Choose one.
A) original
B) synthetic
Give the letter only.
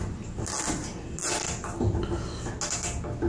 A